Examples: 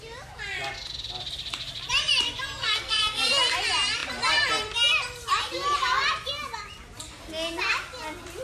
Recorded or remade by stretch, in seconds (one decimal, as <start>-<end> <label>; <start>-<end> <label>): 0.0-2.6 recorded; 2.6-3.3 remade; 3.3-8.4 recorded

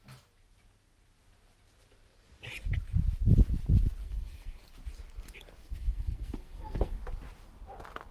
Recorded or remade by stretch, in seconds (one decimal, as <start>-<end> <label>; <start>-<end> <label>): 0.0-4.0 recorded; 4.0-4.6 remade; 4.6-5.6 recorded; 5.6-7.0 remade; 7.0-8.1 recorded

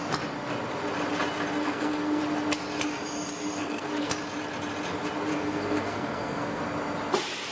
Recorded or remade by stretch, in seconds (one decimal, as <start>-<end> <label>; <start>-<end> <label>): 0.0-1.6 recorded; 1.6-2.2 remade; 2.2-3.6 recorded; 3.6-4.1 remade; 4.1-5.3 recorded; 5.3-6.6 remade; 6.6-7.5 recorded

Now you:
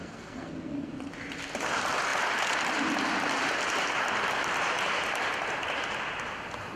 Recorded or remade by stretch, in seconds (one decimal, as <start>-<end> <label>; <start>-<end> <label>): 0.0-0.9 remade; 0.9-6.8 recorded

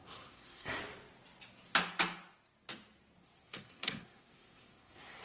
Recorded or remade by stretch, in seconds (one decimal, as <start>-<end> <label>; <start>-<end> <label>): 0.0-0.8 remade; 0.8-3.2 recorded; 3.2-5.2 remade

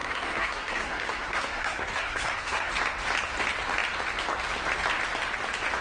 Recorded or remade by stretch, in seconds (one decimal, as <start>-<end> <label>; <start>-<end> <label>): 0.0-2.7 remade; 2.7-5.8 recorded

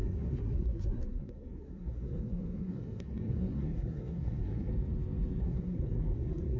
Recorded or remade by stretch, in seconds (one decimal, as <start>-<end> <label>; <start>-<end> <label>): 0.0-4.7 remade; 4.7-5.4 recorded; 5.4-6.6 remade